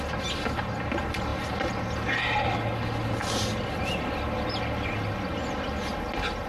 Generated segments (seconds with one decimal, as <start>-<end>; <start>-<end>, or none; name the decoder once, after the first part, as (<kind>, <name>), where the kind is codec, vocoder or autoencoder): none